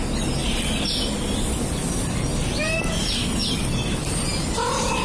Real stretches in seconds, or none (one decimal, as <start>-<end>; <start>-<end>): 0.0-3.4; 4.2-5.0